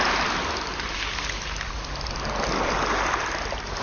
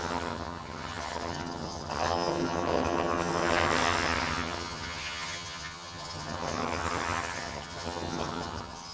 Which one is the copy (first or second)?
second